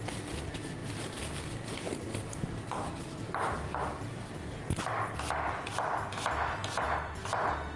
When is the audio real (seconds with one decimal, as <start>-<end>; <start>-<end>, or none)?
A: 0.0-0.8; 5.0-6.6; 7.3-7.8